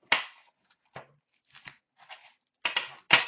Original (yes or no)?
yes